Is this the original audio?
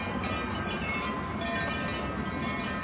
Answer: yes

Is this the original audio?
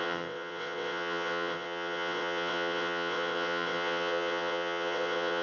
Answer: no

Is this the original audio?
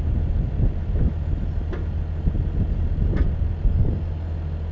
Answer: yes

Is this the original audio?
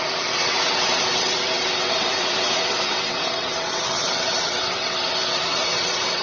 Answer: no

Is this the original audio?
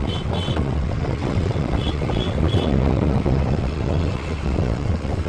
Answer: no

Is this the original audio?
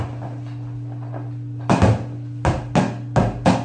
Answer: yes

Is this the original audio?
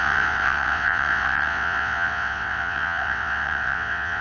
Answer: no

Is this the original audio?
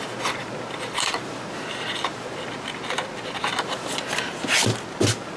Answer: yes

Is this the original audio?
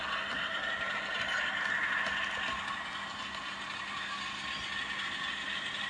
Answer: yes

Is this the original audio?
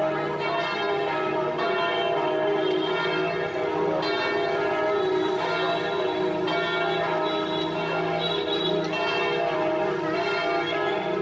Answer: yes